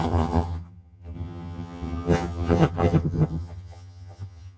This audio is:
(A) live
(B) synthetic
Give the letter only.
B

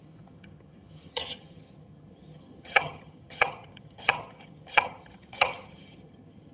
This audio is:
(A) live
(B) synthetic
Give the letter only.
B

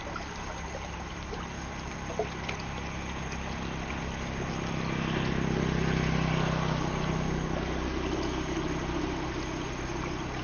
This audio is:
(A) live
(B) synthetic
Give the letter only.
A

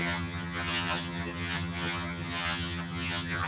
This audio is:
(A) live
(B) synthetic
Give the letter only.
B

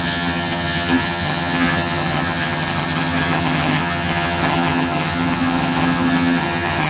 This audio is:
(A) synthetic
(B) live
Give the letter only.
A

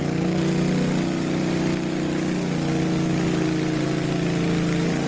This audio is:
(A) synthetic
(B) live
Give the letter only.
B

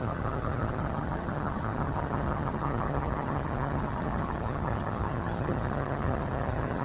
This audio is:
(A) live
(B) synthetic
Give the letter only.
B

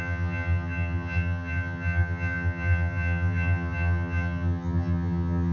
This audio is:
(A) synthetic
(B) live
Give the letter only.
A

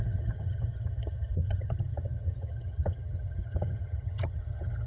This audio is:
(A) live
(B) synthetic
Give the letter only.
B